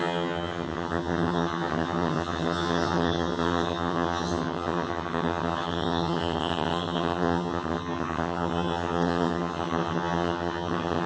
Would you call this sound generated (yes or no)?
yes